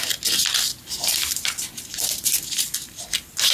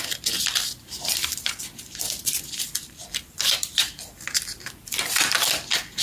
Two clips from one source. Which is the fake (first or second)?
second